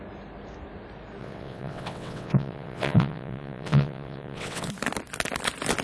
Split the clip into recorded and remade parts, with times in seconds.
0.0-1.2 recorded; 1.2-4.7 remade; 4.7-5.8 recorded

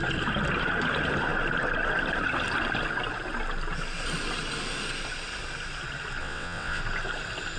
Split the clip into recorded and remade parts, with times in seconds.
0.0-6.2 recorded; 6.2-6.8 remade; 6.8-7.6 recorded

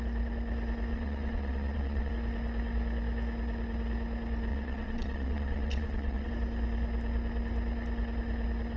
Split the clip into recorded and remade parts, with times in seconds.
0.0-0.9 recorded; 0.9-2.1 remade; 2.1-4.5 recorded; 4.5-6.3 remade; 6.3-8.8 recorded